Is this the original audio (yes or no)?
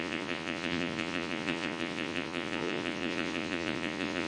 no